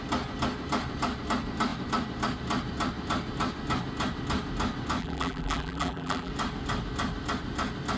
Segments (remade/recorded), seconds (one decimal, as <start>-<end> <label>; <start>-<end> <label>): 0.0-5.0 recorded; 5.0-6.3 remade; 6.3-8.0 recorded